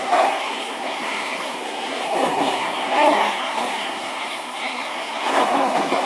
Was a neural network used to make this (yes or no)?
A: yes